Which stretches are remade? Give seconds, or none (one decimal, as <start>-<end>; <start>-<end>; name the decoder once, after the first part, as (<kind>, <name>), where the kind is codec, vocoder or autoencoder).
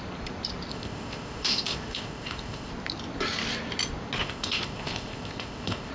0.7-2.7 (codec, ZipCodec); 4.2-5.9